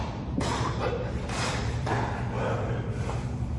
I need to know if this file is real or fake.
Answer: fake